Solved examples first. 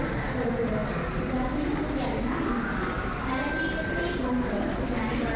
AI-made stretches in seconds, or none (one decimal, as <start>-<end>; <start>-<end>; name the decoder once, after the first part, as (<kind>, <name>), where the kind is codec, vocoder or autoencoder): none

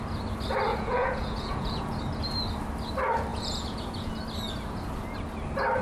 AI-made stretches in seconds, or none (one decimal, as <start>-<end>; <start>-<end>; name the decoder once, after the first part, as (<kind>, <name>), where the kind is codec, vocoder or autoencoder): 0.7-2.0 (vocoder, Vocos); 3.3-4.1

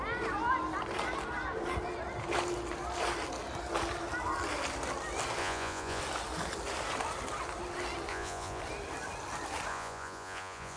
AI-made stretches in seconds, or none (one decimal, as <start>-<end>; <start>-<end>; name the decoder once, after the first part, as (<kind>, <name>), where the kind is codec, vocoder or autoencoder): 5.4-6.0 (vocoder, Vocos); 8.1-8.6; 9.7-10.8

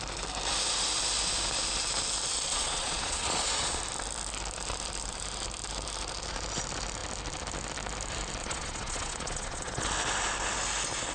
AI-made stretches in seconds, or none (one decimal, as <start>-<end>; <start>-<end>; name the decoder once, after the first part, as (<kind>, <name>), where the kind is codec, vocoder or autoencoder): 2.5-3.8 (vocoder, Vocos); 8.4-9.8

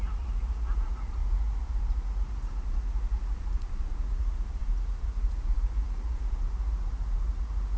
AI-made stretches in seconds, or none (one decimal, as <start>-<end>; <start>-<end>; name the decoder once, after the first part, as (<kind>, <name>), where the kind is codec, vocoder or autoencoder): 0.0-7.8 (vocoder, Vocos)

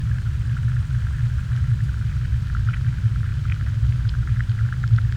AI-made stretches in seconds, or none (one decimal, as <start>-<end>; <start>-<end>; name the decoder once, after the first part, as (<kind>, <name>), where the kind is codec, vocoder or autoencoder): none

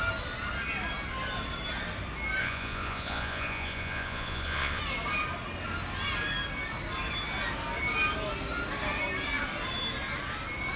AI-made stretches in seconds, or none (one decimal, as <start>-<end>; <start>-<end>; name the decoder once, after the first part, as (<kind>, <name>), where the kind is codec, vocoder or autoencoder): 2.4-4.8 (vocoder, Vocos)

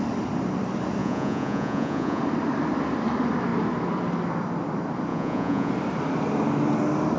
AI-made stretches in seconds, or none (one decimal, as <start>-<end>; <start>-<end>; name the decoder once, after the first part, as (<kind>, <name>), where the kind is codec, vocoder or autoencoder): 1.0-2.2 (vocoder, Vocos); 5.1-5.7